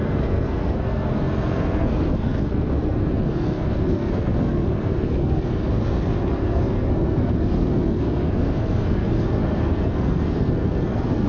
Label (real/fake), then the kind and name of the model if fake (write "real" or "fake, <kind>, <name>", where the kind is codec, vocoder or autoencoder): fake, codec, SNAC